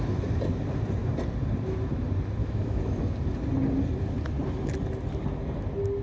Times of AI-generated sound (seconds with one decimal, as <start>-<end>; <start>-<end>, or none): 2.4-3.0